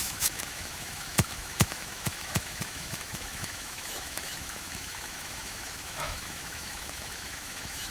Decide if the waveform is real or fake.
fake